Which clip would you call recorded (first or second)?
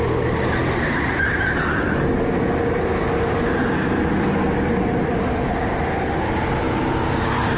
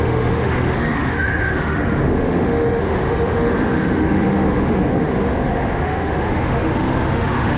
first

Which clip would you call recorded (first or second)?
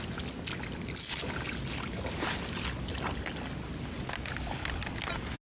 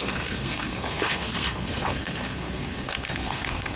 first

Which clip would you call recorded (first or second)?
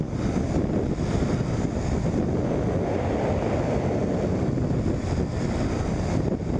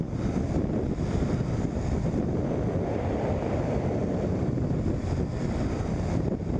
first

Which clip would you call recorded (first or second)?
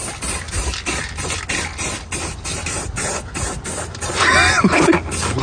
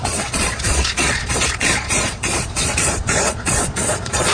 first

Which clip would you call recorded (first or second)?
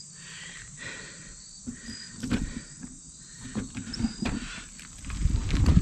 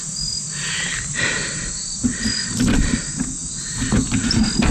second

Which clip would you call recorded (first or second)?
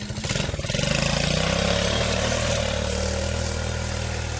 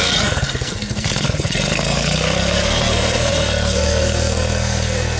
first